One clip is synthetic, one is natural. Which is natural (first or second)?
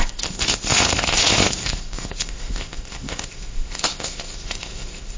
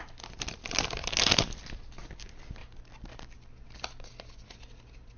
second